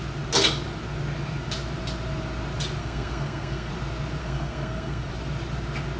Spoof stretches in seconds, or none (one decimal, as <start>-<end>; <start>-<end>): 2.8-3.7; 4.2-5.1